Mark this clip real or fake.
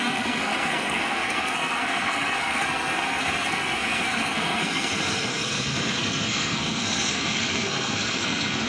fake